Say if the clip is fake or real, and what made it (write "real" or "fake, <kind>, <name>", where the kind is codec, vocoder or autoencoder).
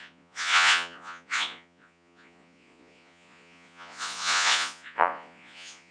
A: fake, vocoder, Vocos